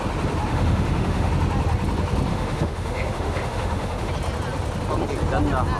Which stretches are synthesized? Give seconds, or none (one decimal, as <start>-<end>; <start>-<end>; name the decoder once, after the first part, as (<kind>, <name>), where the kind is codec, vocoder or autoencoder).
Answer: 0.5-1.3 (autoencoder, DAC-VAE); 2.3-4.1